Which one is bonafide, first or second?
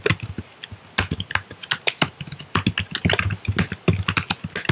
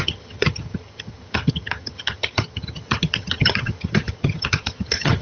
first